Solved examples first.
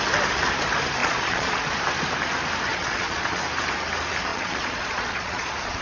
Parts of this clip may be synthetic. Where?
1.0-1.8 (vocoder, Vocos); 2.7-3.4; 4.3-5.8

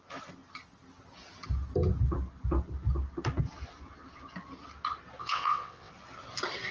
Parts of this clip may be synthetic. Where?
5.2-5.9 (vocoder, WaveNeXt)

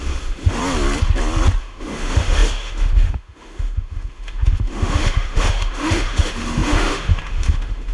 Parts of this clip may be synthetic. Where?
0.0-0.6 (autoencoder, DAC-VAE); 1.6-7.9

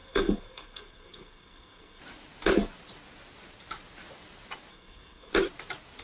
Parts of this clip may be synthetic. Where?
0.0-2.0 (codec, SNAC); 4.7-5.3